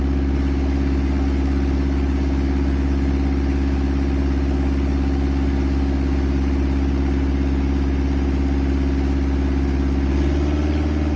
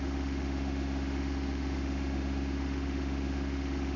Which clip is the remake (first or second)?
second